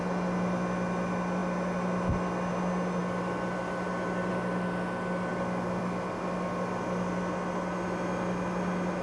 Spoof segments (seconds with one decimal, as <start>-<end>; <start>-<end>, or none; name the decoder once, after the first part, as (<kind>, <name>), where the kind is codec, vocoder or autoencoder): none

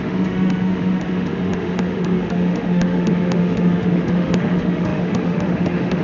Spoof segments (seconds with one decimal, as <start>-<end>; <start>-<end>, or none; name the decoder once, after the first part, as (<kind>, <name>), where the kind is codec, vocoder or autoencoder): 0.0-6.0 (autoencoder, DAC-VAE)

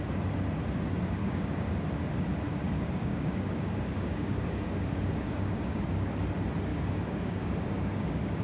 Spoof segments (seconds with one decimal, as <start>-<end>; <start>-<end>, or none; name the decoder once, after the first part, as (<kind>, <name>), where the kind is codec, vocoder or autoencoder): 1.2-1.7 (codec, DAC); 2.5-6.1; 6.7-8.4

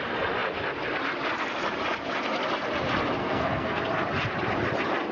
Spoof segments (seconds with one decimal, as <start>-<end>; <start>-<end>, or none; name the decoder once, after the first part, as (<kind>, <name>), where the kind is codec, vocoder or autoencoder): 3.2-3.8 (codec, SNAC)

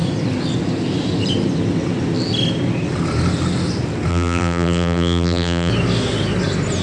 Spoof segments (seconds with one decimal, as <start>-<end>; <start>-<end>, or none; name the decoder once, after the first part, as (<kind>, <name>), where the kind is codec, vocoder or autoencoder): 4.1-5.7 (vocoder, BigVGAN v2)

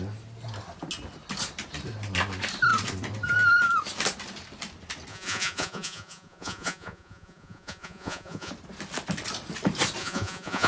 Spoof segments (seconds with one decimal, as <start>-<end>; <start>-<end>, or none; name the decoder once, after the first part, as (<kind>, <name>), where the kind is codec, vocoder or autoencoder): 5.1-8.5 (vocoder, Vocos); 10.0-10.7